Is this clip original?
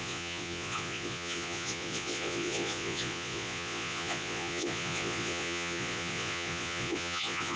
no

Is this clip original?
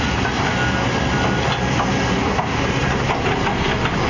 yes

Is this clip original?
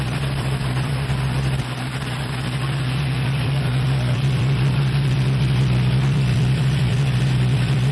no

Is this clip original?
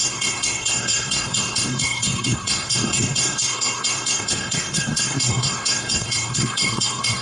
no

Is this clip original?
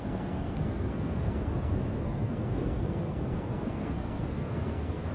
no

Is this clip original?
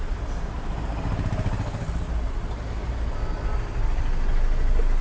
yes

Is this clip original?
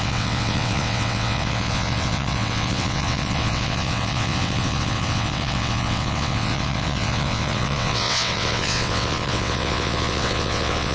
no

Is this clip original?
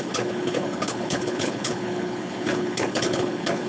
no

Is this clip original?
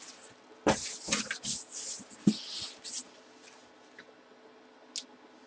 yes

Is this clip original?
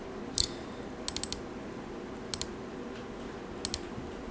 yes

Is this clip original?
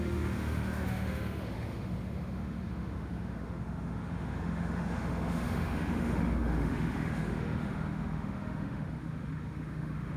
no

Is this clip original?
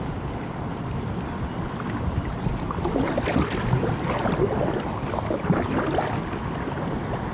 yes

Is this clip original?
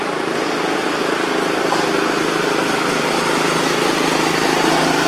yes